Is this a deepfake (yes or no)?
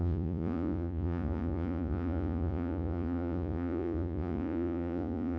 yes